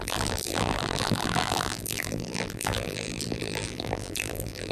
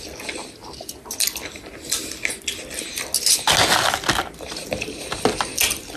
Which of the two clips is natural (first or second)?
second